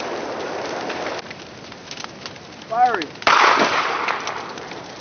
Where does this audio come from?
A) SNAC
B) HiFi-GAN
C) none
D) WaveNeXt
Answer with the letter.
C